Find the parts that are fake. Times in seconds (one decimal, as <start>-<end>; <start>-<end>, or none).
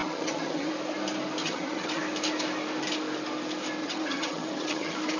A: 0.0-0.7; 1.4-2.0; 3.8-5.2